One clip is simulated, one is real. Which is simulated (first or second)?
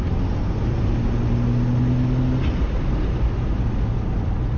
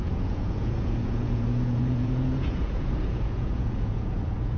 second